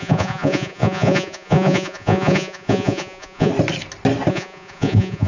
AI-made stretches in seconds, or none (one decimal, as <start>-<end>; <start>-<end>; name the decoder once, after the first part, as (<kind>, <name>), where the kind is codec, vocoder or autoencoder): 0.0-3.5 (vocoder, Vocos); 4.3-5.3